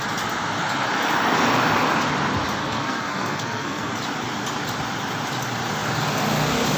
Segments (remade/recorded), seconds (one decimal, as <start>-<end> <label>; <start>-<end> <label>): 0.0-2.6 recorded; 2.6-3.9 remade; 3.9-6.8 recorded